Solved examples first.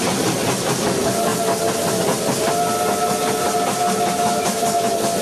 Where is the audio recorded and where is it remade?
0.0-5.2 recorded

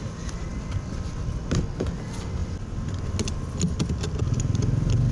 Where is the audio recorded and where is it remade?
0.0-5.1 recorded

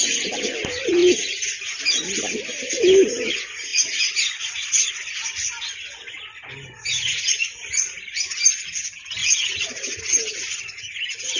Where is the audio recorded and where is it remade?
0.0-1.0 recorded; 1.0-1.8 remade; 1.8-3.7 recorded; 3.7-4.9 remade; 4.9-9.2 recorded; 9.2-10.0 remade; 10.0-11.4 recorded

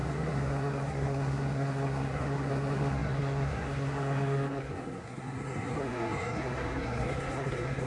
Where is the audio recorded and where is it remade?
0.0-7.9 remade

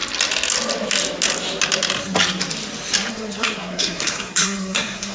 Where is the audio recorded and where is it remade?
0.0-3.1 recorded; 3.1-5.1 remade

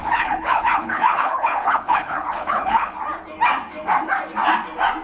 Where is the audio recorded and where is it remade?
0.0-3.0 remade; 3.0-5.0 recorded

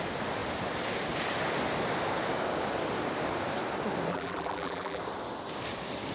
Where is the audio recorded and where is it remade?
0.0-4.1 recorded; 4.1-5.0 remade; 5.0-6.1 recorded